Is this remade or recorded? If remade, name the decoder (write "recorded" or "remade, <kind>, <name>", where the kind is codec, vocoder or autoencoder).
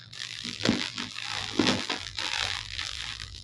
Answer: remade, vocoder, BigVGAN v2